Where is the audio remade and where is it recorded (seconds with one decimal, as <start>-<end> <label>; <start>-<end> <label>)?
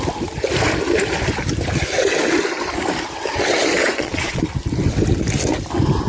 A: 0.0-3.8 recorded; 3.8-4.4 remade; 4.4-6.1 recorded